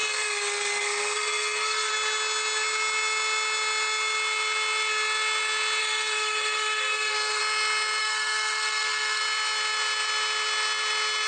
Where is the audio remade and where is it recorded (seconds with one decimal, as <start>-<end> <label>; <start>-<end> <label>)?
0.0-1.9 remade; 1.9-5.8 recorded; 5.8-7.4 remade; 7.4-8.0 recorded; 8.0-9.2 remade; 9.2-11.3 recorded

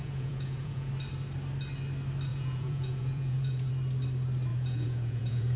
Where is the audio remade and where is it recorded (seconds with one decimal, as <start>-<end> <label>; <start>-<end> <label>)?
0.0-0.9 remade; 0.9-2.3 recorded; 2.3-3.7 remade; 3.7-4.5 recorded; 4.5-5.6 remade

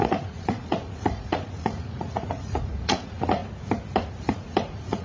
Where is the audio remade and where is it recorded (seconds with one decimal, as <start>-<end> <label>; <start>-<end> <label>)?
0.0-3.4 remade; 3.4-4.0 recorded; 4.0-5.0 remade

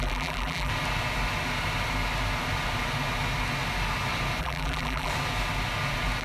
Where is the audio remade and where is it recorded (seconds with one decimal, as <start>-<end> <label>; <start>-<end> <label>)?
0.0-0.7 remade; 0.7-4.4 recorded; 4.4-5.1 remade; 5.1-6.2 recorded

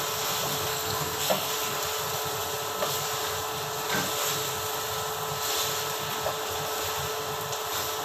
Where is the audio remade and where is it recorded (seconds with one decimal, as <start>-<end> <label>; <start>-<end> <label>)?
0.0-0.7 recorded; 0.7-1.5 remade; 1.5-8.0 recorded